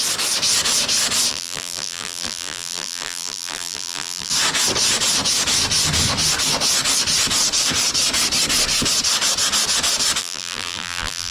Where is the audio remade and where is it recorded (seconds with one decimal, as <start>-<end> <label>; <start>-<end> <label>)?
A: 0.0-1.3 recorded; 1.3-4.3 remade; 4.3-10.2 recorded; 10.2-11.3 remade